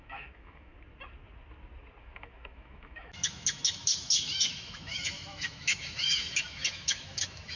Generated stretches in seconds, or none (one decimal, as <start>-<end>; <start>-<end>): 0.0-0.7; 2.0-7.6